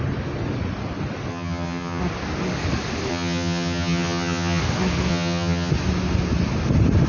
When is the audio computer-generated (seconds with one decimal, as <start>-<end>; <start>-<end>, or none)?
1.3-2.0; 3.1-4.6; 5.1-5.7

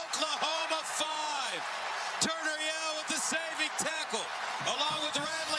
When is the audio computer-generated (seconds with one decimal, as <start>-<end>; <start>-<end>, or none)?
0.0-1.9; 3.9-5.6

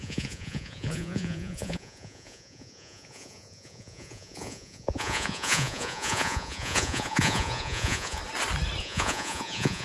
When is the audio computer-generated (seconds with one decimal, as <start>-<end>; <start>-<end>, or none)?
0.0-8.2; 8.8-9.8